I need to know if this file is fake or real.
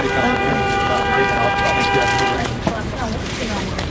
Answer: fake